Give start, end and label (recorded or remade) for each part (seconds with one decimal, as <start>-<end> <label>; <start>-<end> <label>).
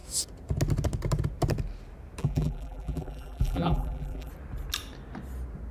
0.0-2.2 recorded; 2.2-4.3 remade; 4.3-5.7 recorded